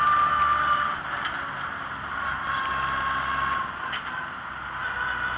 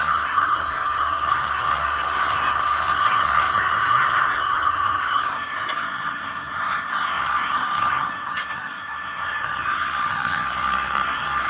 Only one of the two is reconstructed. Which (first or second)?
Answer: second